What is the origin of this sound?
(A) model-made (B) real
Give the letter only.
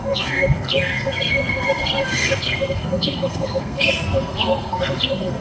A